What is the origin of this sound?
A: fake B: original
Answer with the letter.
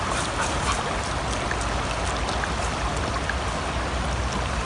B